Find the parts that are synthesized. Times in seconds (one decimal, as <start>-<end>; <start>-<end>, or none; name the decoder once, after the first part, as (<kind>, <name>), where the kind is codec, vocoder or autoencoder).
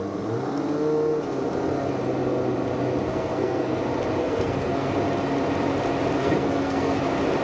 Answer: 3.1-3.8 (codec, SNAC); 4.2-4.9; 6.2-7.0